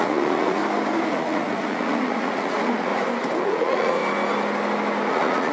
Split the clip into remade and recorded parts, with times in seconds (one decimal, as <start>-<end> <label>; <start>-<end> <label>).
0.0-0.6 remade; 0.6-1.1 recorded; 1.1-2.9 remade; 2.9-3.5 recorded; 3.5-4.0 remade; 4.0-5.1 recorded; 5.1-5.5 remade